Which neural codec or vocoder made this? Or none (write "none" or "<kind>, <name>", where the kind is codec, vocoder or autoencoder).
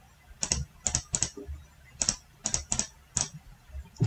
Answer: none